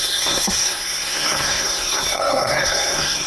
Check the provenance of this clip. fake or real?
fake